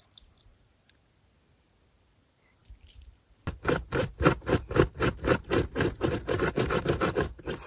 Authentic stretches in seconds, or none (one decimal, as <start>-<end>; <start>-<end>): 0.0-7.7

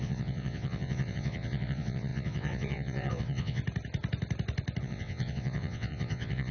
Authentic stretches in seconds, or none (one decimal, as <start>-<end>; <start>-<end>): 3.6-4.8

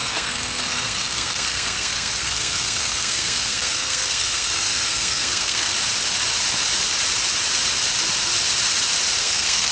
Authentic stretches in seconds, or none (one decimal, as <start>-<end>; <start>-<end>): 5.7-9.2

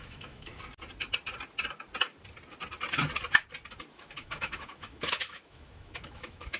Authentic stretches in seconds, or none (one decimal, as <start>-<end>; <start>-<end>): 0.5-3.9

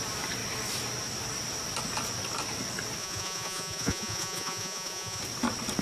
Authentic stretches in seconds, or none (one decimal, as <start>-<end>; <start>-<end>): 0.0-3.0; 5.2-5.8

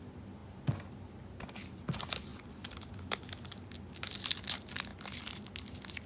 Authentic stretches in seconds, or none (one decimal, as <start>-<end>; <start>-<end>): 0.0-6.1

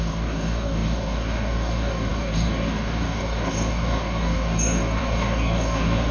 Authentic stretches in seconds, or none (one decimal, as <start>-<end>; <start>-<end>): none